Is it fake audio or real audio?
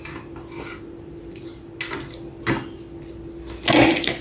real